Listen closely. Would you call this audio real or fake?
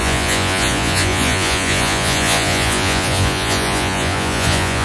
fake